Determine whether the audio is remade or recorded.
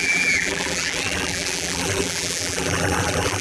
remade